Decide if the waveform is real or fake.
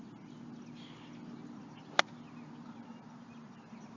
real